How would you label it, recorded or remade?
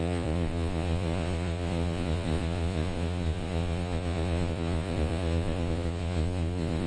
remade